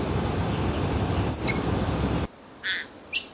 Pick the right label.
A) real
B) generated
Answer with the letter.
A